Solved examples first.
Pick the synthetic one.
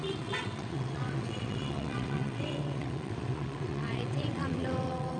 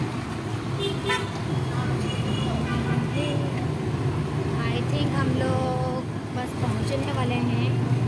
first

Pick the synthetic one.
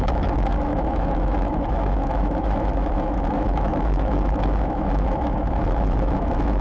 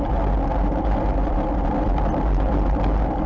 first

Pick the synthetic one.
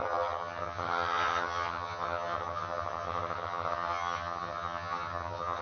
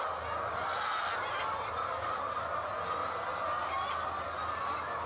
first